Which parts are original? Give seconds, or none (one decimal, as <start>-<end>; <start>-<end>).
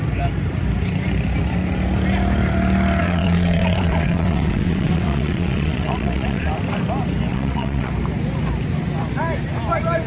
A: 0.0-3.0; 6.5-7.3; 7.9-10.1